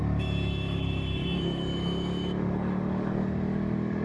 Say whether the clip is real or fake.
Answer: fake